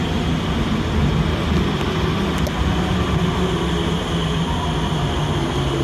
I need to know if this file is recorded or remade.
recorded